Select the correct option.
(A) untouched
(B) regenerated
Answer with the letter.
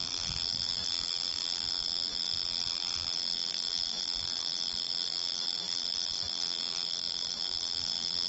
B